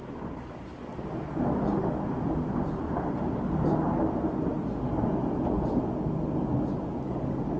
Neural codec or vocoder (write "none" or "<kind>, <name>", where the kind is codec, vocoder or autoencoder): none